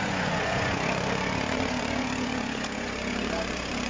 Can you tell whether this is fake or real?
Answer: fake